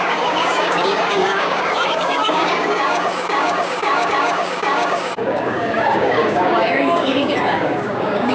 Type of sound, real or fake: fake